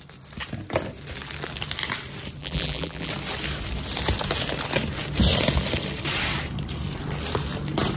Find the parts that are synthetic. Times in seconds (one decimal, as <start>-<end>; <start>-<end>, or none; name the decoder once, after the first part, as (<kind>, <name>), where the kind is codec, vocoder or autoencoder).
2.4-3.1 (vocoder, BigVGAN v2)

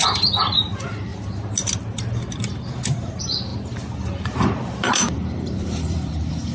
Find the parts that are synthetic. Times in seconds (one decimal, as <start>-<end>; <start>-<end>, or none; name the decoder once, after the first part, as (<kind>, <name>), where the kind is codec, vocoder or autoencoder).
0.6-1.1 (vocoder, BigVGAN v2); 3.0-6.5

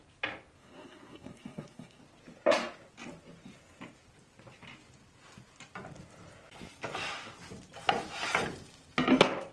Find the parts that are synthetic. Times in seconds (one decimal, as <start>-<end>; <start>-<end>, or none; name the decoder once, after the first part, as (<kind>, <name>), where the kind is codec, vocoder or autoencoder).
0.6-2.0 (codec, SNAC)

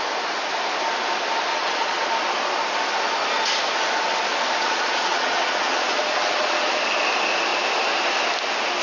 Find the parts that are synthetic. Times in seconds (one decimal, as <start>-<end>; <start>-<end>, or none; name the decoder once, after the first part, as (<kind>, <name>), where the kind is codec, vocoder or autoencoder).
1.5-2.1 (vocoder, Vocos); 4.6-6.8

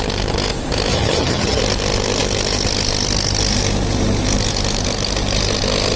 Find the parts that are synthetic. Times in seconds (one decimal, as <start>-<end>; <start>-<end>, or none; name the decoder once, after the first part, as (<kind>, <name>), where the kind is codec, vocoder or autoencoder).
0.9-1.6 (vocoder, HiFi-GAN)

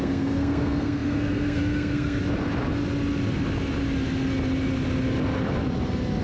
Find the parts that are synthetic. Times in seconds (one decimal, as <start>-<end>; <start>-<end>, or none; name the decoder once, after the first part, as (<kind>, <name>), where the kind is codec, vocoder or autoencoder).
0.0-2.2 (codec, SNAC)

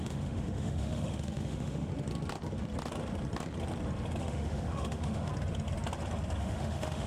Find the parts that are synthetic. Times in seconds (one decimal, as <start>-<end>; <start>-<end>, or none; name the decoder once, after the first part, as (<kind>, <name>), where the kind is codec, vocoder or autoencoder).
0.0-1.9 (autoencoder, DAC-VAE); 4.2-5.3; 6.4-7.1